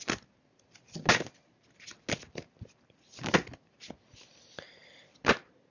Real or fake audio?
real